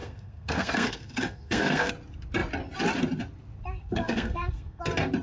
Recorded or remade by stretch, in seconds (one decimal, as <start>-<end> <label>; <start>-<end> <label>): 0.0-1.9 remade; 1.9-3.8 recorded; 3.8-4.8 remade; 4.8-5.2 recorded